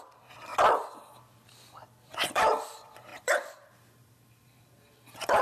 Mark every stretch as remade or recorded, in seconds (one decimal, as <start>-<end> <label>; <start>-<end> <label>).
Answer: 0.0-0.5 remade; 0.5-2.0 recorded; 2.0-5.4 remade

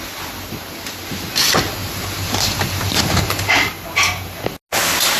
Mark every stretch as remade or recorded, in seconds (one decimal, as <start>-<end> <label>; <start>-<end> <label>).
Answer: 0.0-1.8 recorded; 1.8-3.4 remade; 3.4-5.2 recorded

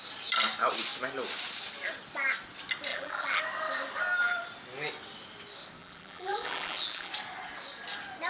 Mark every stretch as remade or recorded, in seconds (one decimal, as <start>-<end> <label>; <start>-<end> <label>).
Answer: 0.0-2.9 recorded; 2.9-3.4 remade; 3.4-5.8 recorded; 5.8-7.1 remade; 7.1-8.3 recorded

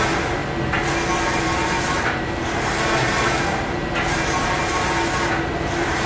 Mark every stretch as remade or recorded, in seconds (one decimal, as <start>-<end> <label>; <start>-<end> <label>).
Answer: 0.0-0.4 remade; 0.4-1.3 recorded; 1.3-6.1 remade

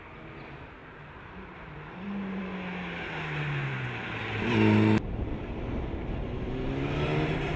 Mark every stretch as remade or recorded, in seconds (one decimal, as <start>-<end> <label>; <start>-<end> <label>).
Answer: 0.0-0.8 recorded; 0.8-2.4 remade; 2.4-7.6 recorded

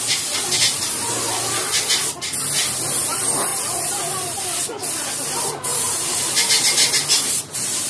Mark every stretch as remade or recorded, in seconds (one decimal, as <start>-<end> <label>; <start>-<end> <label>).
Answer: 0.0-3.5 recorded; 3.5-4.4 remade; 4.4-5.7 recorded; 5.7-6.2 remade; 6.2-7.9 recorded

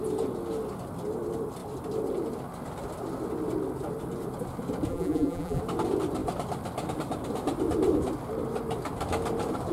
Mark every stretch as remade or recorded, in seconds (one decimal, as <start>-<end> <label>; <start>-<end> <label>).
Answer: 0.0-4.9 recorded; 4.9-5.6 remade; 5.6-9.7 recorded

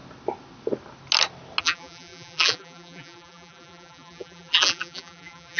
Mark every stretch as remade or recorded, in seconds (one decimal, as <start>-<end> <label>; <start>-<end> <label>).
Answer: 0.0-1.6 recorded; 1.6-5.6 remade